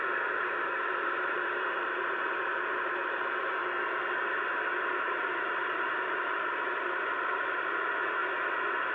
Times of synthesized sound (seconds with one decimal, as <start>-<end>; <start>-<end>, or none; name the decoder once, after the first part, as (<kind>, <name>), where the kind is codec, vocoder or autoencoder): 0.0-3.6 (vocoder, BigVGAN v2); 5.2-8.2